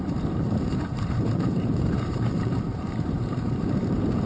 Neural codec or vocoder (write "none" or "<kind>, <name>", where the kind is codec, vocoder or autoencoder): vocoder, BigVGAN v2